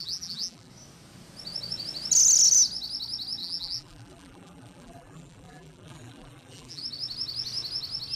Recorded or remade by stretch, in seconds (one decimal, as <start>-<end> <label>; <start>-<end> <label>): 0.0-0.7 remade; 0.7-3.4 recorded; 3.4-6.8 remade; 6.8-8.2 recorded